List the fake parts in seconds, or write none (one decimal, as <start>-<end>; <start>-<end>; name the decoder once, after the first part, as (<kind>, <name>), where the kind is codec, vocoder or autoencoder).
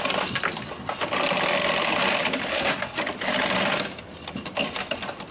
2.5-3.0 (codec, SNAC)